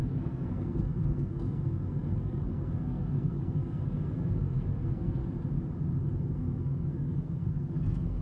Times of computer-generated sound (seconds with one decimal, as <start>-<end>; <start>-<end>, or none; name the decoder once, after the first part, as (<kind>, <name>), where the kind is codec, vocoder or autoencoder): 0.0-5.2 (codec, SNAC); 6.2-8.2